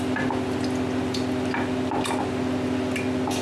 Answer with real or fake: real